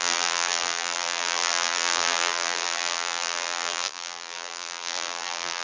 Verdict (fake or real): fake